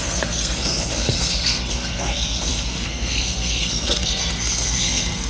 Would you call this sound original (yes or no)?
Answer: no